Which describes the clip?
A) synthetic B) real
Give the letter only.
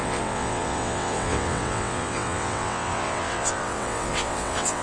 A